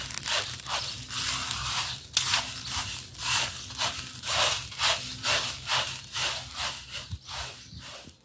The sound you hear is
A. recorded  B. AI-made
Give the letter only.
A